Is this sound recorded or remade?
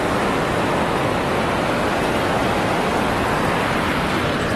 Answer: recorded